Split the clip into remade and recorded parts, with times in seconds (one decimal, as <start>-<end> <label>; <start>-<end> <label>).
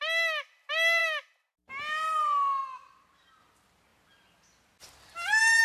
0.0-5.6 recorded